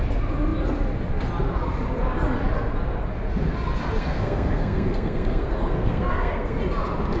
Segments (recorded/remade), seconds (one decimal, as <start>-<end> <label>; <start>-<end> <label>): 0.0-4.0 recorded; 4.0-6.6 remade; 6.6-7.2 recorded